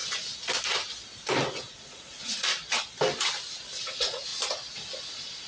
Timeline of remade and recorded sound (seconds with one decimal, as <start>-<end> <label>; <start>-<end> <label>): 0.0-1.5 recorded; 1.5-2.5 remade; 2.5-3.8 recorded; 3.8-4.3 remade; 4.3-5.1 recorded; 5.1-5.5 remade